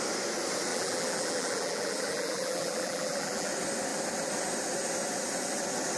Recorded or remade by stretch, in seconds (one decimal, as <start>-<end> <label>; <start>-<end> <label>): 0.0-0.7 recorded; 0.7-3.5 remade; 3.5-6.0 recorded